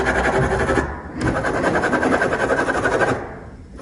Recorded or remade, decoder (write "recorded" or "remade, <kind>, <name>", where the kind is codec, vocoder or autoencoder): recorded